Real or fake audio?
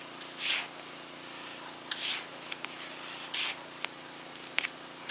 real